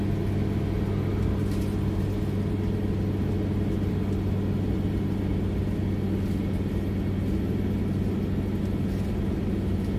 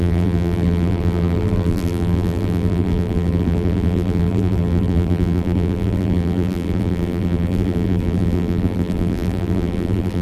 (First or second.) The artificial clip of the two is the second